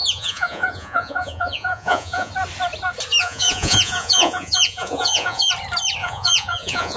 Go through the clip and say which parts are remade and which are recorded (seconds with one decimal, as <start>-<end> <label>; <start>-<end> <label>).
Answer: 0.0-2.3 remade; 2.3-3.2 recorded; 3.2-5.5 remade; 5.5-6.0 recorded; 6.0-7.0 remade